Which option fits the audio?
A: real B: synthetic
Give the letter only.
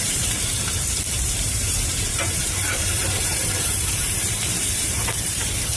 B